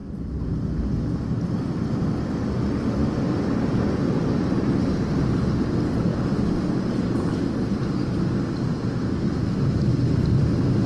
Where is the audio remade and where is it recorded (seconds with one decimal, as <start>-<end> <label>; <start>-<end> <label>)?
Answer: 0.0-3.0 recorded; 3.0-4.8 remade; 4.8-6.1 recorded; 6.1-7.9 remade; 7.9-10.9 recorded